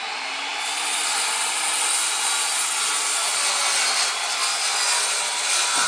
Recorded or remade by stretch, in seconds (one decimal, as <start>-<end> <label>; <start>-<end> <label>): 0.0-5.9 recorded

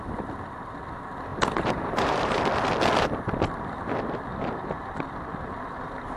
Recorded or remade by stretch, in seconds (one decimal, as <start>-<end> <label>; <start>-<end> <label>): 0.0-1.3 recorded; 1.3-2.4 remade; 2.4-4.3 recorded; 4.3-4.9 remade; 4.9-6.2 recorded

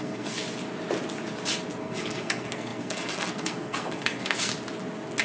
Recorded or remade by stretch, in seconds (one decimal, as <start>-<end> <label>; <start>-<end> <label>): 0.0-0.4 remade; 0.4-1.8 recorded; 1.8-4.5 remade; 4.5-5.2 recorded

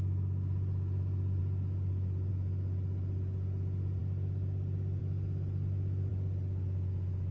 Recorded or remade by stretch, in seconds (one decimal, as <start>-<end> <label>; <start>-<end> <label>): 0.0-7.3 recorded

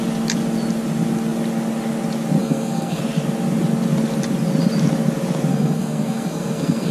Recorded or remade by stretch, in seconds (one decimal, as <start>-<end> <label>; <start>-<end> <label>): 0.0-2.4 recorded; 2.4-3.0 remade; 3.0-5.5 recorded; 5.5-6.9 remade

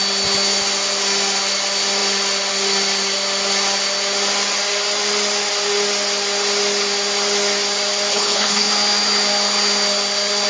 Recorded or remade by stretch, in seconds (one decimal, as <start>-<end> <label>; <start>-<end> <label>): 0.0-8.1 recorded; 8.1-8.7 remade; 8.7-10.5 recorded

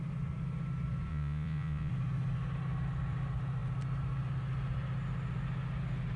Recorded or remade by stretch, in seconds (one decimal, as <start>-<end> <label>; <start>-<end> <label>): 0.0-1.1 recorded; 1.1-1.9 remade; 1.9-6.2 recorded